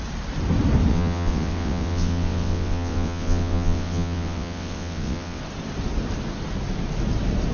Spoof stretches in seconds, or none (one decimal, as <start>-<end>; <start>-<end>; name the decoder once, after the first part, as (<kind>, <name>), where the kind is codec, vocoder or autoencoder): 0.9-5.4 (vocoder, WaveNeXt)